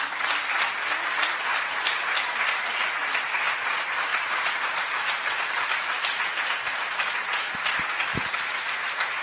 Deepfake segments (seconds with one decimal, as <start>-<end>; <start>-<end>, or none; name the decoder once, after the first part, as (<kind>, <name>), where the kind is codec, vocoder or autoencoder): 1.5-2.1 (vocoder, BigVGAN v2); 4.1-6.5